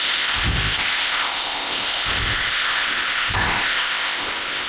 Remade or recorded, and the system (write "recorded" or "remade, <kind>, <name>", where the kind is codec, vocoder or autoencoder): remade, codec, ZipCodec